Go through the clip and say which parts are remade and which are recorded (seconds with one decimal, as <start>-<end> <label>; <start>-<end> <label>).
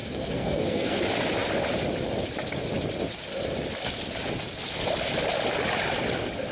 0.0-1.0 remade; 1.0-6.5 recorded